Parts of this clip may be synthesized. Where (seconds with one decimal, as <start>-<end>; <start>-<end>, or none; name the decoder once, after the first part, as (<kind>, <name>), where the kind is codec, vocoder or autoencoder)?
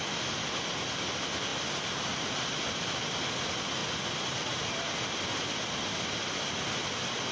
1.5-2.4 (vocoder, BigVGAN v2)